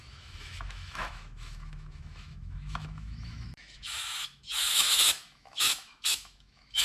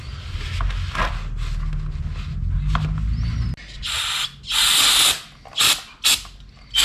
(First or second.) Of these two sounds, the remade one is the first